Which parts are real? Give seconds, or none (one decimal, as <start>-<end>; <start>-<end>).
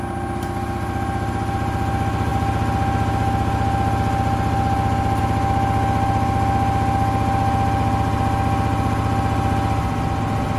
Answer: 0.0-10.6